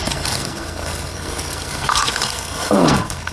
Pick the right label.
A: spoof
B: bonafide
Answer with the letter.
A